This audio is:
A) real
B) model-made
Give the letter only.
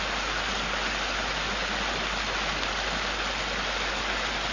A